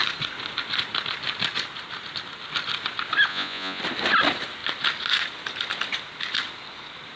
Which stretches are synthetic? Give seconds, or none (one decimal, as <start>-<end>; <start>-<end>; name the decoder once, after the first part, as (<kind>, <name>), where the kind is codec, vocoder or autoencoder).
3.3-3.8 (vocoder, Vocos)